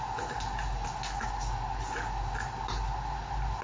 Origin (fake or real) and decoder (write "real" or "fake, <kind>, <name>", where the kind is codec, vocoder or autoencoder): real